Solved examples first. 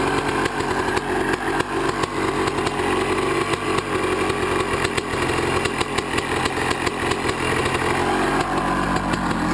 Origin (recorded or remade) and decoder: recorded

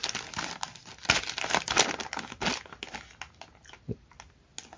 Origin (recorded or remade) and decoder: recorded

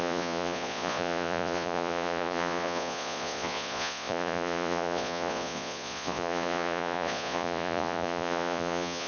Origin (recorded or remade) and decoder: remade, vocoder, Vocos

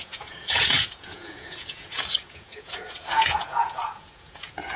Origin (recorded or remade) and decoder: remade, vocoder, Vocos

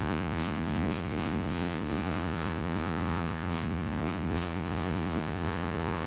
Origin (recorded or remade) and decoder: remade, vocoder, Vocos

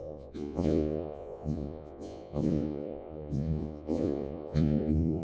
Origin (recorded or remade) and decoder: remade, vocoder, Vocos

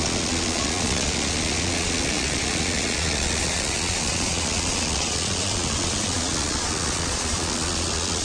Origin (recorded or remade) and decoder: remade, vocoder, Vocos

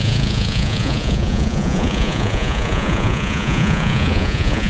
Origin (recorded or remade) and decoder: remade, vocoder, Vocos